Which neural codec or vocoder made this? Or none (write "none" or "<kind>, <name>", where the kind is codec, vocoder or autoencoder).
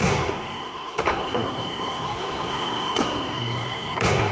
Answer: codec, SNAC